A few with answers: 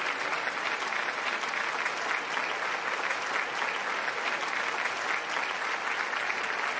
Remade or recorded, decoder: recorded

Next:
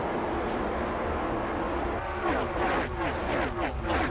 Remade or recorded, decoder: recorded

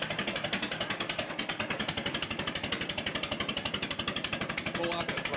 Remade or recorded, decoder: recorded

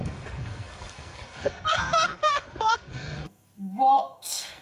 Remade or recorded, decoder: remade, codec, SNAC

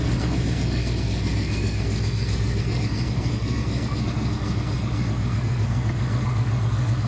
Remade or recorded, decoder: remade, codec, SNAC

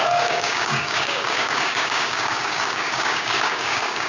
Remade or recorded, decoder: remade, codec, DAC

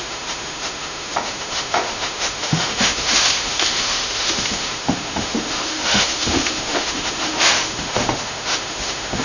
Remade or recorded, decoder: remade, autoencoder, DAC-VAE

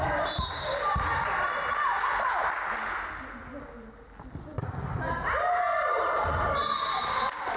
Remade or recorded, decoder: recorded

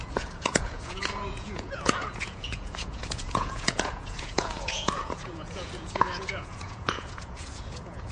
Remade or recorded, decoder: remade, vocoder, Vocos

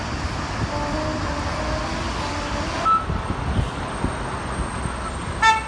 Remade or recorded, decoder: recorded